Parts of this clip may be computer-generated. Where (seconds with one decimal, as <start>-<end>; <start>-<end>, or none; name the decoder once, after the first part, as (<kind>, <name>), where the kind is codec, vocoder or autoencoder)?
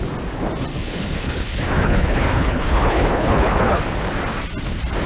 0.7-3.8 (codec, HILCodec)